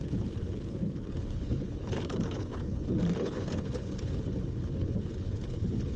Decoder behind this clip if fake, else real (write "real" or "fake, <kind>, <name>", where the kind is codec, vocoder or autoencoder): fake, codec, HILCodec